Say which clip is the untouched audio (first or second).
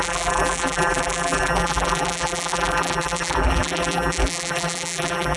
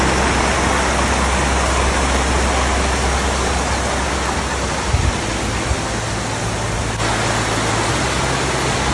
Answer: second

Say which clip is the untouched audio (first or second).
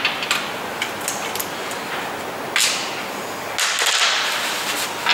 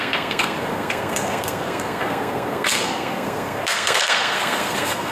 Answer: first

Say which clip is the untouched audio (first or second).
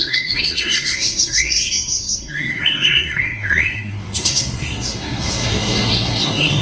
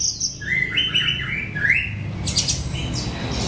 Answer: second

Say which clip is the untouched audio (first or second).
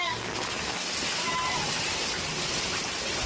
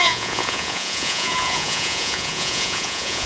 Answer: first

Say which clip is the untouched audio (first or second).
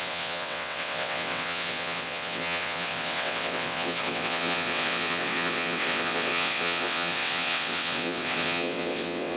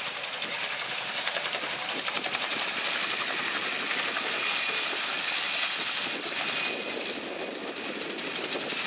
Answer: second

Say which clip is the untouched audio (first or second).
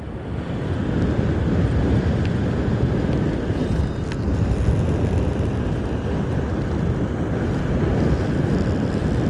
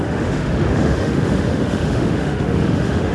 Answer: first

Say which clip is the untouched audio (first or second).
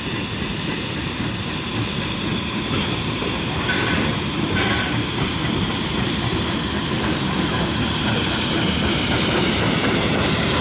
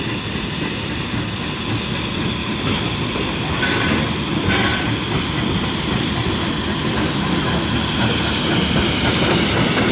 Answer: second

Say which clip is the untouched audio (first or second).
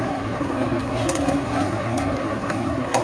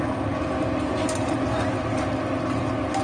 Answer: second